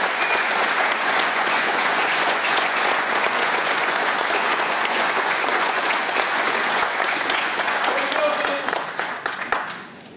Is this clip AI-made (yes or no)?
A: yes